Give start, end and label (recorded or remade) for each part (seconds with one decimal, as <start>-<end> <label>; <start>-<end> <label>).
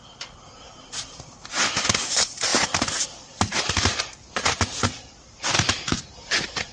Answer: 0.0-6.7 recorded